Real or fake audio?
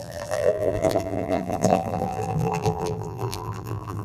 fake